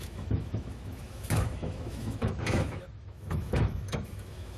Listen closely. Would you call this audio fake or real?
fake